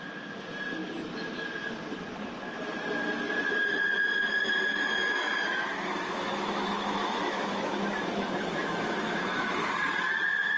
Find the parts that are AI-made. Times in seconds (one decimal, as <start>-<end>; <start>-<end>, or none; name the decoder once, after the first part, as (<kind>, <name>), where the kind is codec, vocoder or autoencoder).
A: 4.7-9.7 (autoencoder, DAC-VAE)

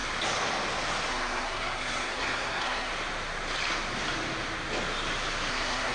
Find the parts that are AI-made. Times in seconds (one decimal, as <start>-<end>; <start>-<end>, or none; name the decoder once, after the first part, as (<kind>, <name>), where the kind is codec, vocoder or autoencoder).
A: 1.1-2.9 (codec, SNAC); 5.5-5.9

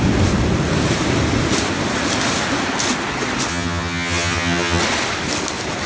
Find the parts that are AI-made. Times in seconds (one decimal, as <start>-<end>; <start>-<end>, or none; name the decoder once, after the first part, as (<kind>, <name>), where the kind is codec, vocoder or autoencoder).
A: 3.5-4.8 (vocoder, HiFi-GAN)

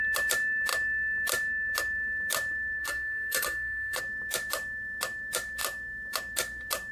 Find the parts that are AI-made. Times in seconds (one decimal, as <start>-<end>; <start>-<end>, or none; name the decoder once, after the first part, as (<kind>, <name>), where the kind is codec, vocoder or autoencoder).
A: 2.8-4.0 (codec, SNAC)